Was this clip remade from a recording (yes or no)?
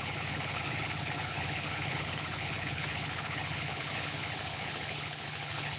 yes